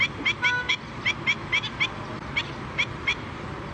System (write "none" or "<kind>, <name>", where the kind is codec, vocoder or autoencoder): none